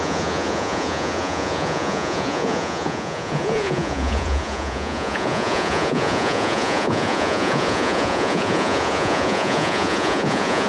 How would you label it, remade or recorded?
remade